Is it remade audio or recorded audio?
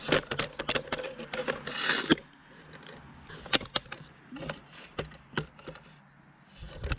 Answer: recorded